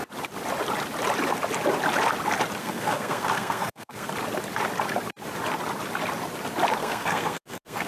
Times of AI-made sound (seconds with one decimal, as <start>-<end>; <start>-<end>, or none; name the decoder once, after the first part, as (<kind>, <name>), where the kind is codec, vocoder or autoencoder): 2.6-4.1 (codec, SNAC); 6.8-7.9